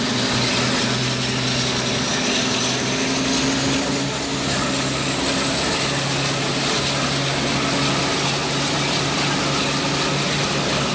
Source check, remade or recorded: recorded